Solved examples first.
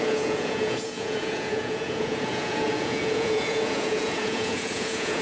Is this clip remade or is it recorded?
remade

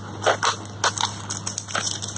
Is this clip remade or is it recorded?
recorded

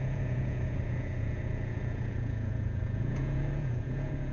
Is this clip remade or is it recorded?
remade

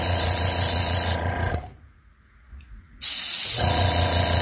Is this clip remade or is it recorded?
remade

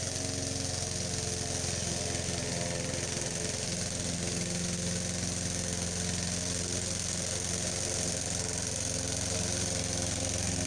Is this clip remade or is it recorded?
recorded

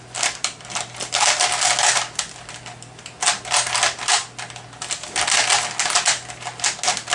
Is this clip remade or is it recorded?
recorded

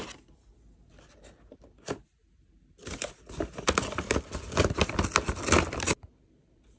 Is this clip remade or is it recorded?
recorded